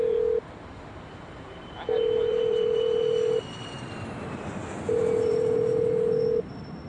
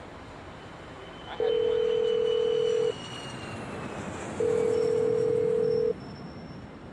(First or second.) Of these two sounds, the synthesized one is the first